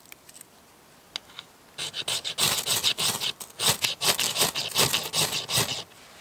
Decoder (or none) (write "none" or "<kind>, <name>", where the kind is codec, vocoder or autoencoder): none